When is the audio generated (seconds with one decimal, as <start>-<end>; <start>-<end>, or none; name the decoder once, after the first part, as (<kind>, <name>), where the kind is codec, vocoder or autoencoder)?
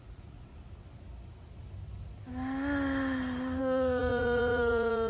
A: 0.0-0.5 (vocoder, Vocos); 3.6-5.1